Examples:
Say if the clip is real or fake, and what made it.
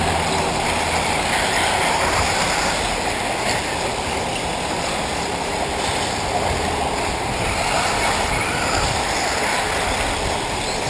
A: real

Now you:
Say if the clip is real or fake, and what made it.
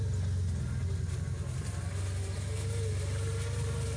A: real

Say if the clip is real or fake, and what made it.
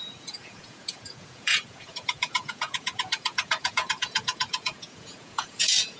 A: fake, vocoder, Vocos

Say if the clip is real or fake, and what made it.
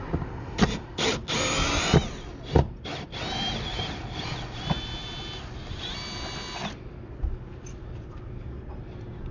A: real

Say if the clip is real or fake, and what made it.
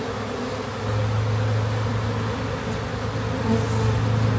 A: real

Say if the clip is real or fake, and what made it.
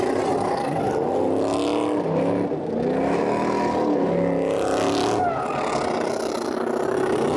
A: real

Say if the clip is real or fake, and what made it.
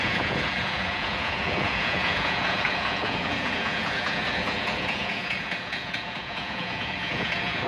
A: fake, vocoder, Vocos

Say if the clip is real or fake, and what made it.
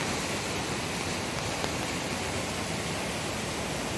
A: real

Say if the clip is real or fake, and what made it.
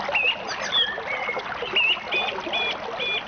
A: real